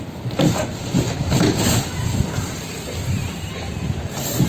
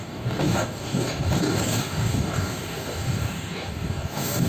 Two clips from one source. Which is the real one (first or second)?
first